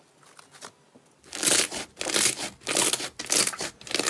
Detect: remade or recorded recorded